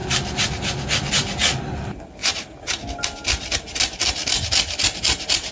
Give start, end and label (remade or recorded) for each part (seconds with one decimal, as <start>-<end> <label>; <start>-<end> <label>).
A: 0.0-5.5 recorded